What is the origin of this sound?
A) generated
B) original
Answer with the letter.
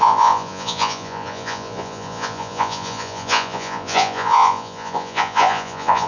A